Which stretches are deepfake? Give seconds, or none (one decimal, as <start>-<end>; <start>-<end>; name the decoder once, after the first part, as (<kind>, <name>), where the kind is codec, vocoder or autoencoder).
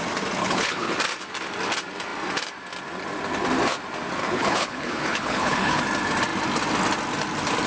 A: 0.4-0.9 (codec, HILCodec); 4.2-5.8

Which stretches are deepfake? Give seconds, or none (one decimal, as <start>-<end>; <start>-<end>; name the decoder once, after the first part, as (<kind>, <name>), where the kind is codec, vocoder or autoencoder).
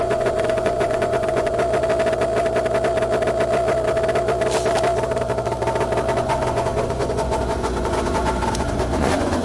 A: 0.0-1.5 (vocoder, Vocos); 6.2-9.4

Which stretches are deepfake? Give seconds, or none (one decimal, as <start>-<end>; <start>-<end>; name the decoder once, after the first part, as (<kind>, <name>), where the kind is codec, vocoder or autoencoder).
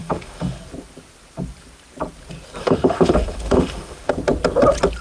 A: 0.0-0.6 (autoencoder, DAC-VAE); 2.6-4.1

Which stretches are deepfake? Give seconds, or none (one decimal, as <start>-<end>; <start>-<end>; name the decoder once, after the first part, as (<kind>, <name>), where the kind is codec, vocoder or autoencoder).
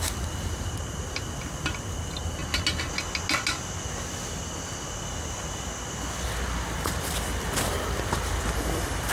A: none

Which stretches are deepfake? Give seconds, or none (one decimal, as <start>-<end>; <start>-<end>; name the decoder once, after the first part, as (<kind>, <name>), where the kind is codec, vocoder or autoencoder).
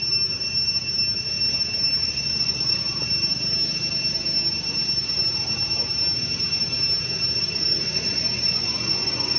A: 2.0-2.8 (vocoder, Vocos); 7.4-9.4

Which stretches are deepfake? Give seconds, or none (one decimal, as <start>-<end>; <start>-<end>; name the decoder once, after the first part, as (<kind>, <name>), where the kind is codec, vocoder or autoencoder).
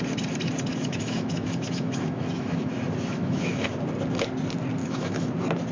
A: 0.7-2.7 (autoencoder, DAC-VAE); 3.1-3.7; 4.8-5.3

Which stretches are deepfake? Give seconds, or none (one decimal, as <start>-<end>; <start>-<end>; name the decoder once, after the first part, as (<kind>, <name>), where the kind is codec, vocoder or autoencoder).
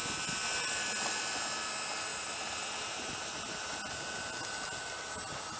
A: 0.4-1.2 (vocoder, BigVGAN v2); 2.1-3.9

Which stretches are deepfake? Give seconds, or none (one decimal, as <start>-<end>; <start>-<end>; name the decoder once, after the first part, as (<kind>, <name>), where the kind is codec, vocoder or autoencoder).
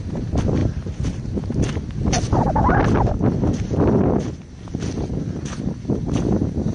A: 0.6-1.6 (vocoder, BigVGAN v2)